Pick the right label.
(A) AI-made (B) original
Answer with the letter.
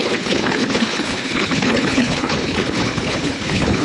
A